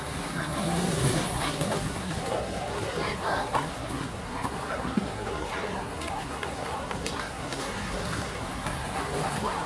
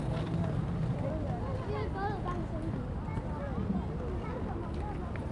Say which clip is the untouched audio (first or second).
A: second